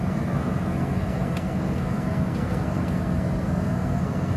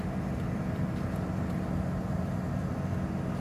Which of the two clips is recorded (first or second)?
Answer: second